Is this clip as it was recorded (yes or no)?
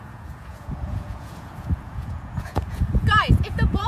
no